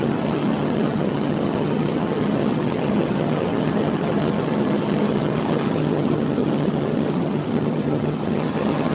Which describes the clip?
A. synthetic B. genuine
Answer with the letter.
A